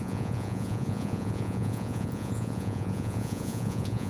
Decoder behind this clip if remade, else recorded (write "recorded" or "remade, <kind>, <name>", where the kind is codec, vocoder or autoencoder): remade, vocoder, Vocos